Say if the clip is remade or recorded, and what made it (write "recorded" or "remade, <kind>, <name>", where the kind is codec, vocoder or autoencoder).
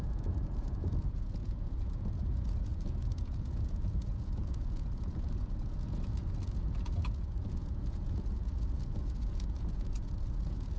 remade, vocoder, Vocos